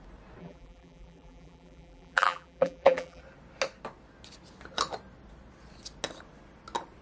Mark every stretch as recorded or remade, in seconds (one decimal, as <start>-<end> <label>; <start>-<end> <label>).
0.0-0.4 recorded; 0.4-3.2 remade; 3.2-7.0 recorded